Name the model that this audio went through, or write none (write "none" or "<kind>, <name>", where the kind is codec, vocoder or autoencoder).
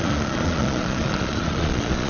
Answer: vocoder, Vocos